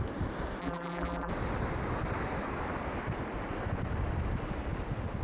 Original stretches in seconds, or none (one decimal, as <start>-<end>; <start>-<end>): 0.0-0.6; 1.3-5.2